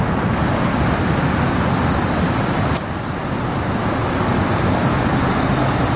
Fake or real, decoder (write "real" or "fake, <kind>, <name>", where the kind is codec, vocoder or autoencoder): real